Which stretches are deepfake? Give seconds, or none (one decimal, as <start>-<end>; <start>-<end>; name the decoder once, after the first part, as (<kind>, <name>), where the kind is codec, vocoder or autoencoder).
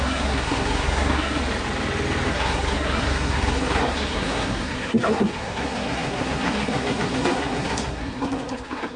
0.0-1.4 (codec, SNAC); 2.3-9.0